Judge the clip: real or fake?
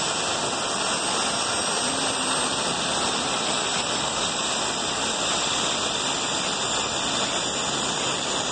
real